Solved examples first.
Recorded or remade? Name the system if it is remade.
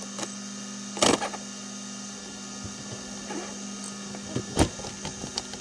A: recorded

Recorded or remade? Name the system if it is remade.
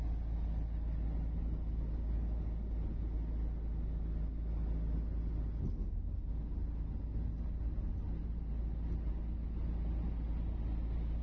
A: recorded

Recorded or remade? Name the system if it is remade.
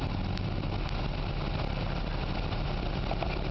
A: recorded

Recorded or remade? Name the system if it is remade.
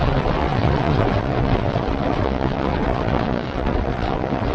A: remade, vocoder, WaveNeXt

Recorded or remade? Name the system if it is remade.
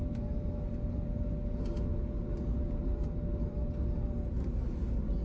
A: recorded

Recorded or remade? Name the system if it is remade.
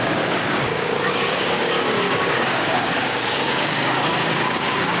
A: remade, codec, DAC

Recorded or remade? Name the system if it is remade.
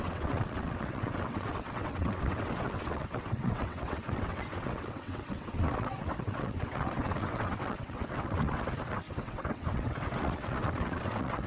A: remade, vocoder, WaveNeXt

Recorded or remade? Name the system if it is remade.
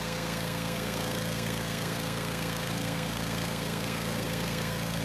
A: remade, codec, SNAC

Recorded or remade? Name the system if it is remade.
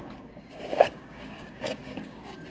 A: remade, codec, DAC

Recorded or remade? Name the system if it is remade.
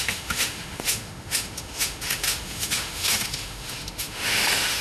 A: remade, autoencoder, DAC-VAE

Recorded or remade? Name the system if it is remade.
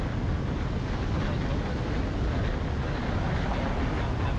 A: recorded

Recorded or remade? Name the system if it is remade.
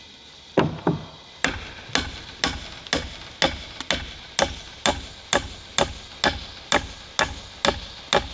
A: recorded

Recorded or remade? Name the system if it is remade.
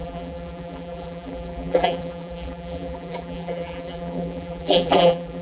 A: remade, vocoder, BigVGAN v2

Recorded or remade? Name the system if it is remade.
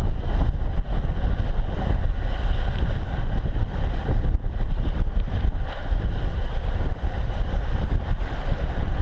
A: remade, vocoder, BigVGAN v2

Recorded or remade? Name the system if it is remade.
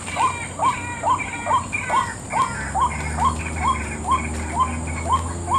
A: recorded